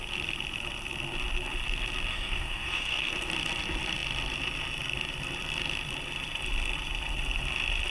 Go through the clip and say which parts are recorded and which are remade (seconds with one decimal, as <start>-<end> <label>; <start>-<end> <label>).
0.0-2.1 recorded; 2.1-3.1 remade; 3.1-7.9 recorded